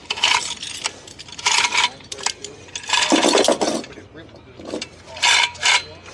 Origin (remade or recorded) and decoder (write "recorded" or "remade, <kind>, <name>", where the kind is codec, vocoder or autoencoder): recorded